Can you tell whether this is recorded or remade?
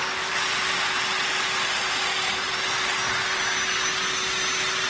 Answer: recorded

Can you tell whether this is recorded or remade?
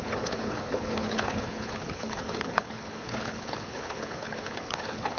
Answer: remade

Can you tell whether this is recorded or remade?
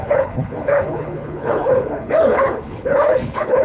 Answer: remade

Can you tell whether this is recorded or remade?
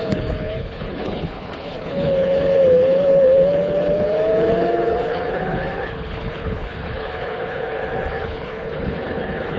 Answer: remade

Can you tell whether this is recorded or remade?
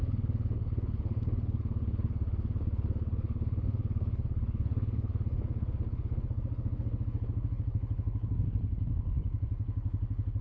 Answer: remade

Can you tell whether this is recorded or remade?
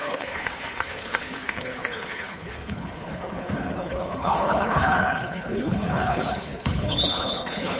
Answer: remade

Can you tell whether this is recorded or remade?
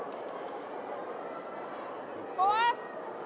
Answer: recorded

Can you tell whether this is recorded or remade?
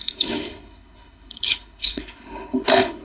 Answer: remade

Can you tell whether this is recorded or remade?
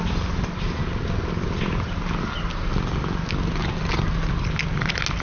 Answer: recorded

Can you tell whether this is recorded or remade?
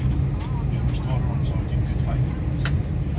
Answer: recorded